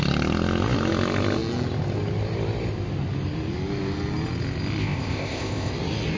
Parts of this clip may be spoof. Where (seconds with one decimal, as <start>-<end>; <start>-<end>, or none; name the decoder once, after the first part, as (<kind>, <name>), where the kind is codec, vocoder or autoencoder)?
4.8-5.7 (codec, ZipCodec)

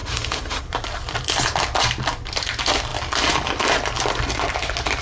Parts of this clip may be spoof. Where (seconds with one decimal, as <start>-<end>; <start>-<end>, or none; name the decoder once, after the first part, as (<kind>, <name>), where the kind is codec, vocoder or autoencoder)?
0.0-0.6 (autoencoder, DAC-VAE)

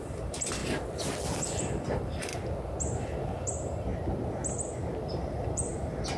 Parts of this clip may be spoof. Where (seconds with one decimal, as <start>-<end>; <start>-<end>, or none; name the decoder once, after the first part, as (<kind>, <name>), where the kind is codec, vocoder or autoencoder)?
0.0-0.6 (vocoder, BigVGAN v2); 1.4-2.3; 3.0-3.9; 5.0-5.7

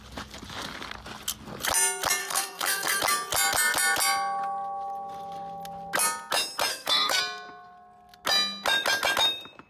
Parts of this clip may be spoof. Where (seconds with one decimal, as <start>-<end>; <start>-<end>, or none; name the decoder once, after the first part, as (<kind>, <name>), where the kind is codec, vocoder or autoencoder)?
2.2-3.0 (codec, SNAC); 6.7-7.2

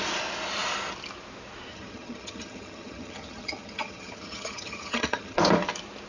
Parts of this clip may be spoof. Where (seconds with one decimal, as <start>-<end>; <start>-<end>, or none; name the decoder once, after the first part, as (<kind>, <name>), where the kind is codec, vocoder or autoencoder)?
1.7-5.4 (vocoder, HiFi-GAN)

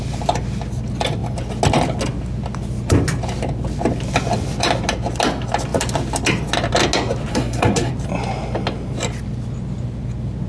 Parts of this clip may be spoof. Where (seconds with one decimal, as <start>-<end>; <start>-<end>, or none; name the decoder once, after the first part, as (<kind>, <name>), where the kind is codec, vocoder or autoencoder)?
7.3-7.9 (codec, SNAC)

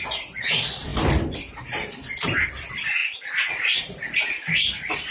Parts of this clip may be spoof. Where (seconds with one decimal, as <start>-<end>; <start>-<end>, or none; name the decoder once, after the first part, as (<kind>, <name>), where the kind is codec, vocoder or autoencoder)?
none

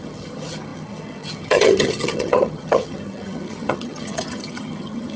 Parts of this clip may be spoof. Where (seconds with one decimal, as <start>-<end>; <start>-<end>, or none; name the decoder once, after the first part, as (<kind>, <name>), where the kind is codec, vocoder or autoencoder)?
0.0-5.2 (vocoder, HiFi-GAN)